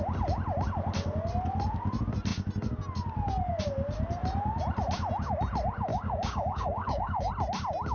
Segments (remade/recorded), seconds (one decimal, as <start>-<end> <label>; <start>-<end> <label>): 0.0-5.9 recorded; 5.9-7.3 remade; 7.3-7.9 recorded